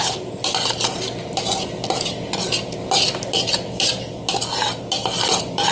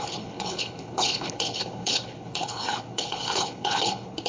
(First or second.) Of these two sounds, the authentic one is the first